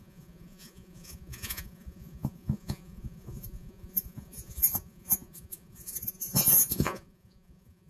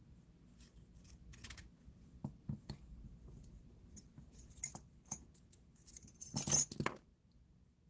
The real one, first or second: second